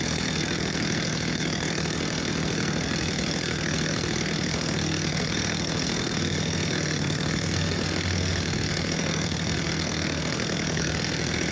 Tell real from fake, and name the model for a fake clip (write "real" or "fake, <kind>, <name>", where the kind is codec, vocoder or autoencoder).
fake, codec, SNAC